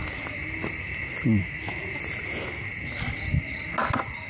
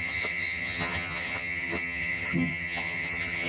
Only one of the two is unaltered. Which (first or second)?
first